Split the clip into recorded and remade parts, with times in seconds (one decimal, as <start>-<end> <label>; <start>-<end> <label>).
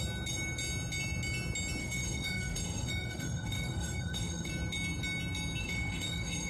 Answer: 0.0-1.8 recorded; 1.8-4.5 remade; 4.5-5.6 recorded; 5.6-6.5 remade